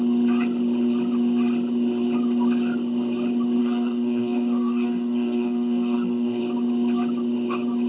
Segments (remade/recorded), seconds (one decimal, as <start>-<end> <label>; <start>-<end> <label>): 0.0-3.6 recorded; 3.6-6.4 remade; 6.4-7.9 recorded